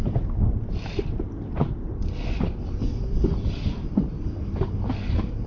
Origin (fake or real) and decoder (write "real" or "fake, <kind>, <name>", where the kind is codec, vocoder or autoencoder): real